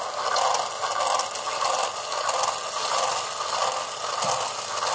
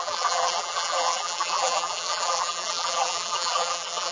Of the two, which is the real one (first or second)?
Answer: first